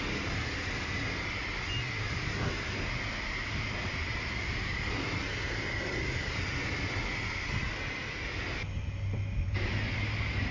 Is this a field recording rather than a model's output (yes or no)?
yes